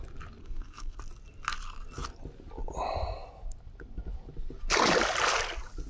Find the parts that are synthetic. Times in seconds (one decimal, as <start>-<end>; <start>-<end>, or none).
0.4-1.0